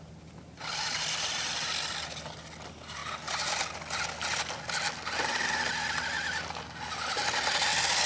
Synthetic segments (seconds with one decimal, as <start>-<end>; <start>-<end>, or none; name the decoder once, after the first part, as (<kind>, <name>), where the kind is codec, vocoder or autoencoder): none

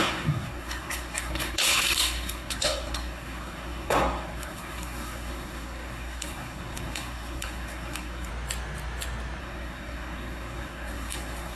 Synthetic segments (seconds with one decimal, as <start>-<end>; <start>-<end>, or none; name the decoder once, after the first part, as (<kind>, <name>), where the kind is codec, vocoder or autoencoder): 0.0-8.3 (codec, SNAC); 9.4-11.6

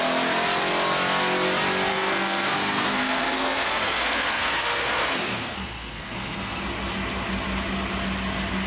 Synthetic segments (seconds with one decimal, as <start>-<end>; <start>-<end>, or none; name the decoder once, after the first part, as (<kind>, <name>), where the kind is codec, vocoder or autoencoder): 1.9-6.6 (codec, SNAC)

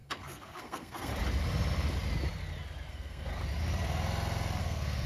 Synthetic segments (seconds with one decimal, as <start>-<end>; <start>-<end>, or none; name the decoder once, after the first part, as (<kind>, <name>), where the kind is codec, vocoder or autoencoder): 0.0-1.1 (codec, SNAC); 2.9-3.3; 4.6-5.1

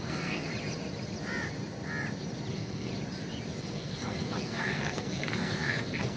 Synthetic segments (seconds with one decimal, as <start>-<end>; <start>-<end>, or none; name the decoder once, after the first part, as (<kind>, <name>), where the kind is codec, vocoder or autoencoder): 0.0-0.5 (codec, SNAC); 2.5-2.9; 3.6-6.2

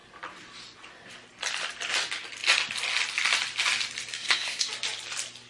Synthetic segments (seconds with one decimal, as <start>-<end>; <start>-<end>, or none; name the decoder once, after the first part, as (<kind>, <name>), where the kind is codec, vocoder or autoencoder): 4.1-4.7 (codec, SNAC)